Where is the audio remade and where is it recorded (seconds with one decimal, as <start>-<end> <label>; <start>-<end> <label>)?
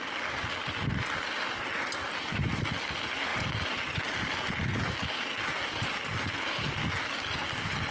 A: 0.0-7.9 recorded